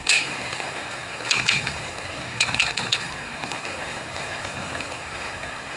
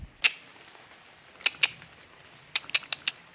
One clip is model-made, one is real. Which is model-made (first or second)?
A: first